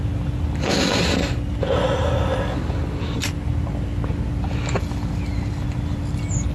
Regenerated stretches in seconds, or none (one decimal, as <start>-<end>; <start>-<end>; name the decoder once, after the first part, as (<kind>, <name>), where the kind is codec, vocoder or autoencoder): none